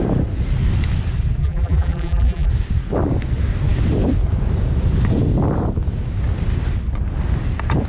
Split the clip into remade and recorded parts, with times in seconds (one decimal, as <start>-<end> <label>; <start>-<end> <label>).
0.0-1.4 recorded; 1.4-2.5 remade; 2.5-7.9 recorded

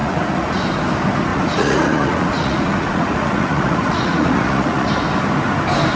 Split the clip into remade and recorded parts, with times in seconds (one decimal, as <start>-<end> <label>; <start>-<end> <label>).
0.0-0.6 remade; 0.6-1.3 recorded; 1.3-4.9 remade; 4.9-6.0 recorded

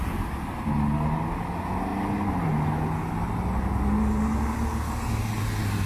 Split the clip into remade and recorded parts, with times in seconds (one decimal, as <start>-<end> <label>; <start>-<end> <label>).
0.0-5.9 recorded

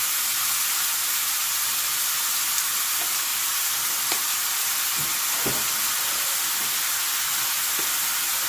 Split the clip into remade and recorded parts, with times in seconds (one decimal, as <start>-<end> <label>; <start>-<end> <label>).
0.0-8.5 recorded

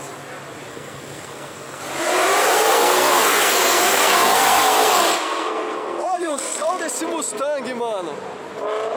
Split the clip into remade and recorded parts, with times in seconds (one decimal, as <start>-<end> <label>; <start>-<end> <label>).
0.0-0.7 recorded; 0.7-1.8 remade; 1.8-2.4 recorded; 2.4-6.8 remade; 6.8-9.0 recorded